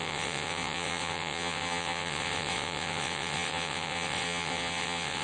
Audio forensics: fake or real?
fake